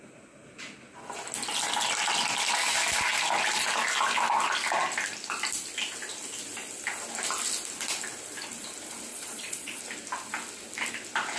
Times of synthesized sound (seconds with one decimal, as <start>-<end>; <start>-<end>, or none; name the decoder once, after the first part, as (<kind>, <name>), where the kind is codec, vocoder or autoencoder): 9.1-9.8 (vocoder, Vocos)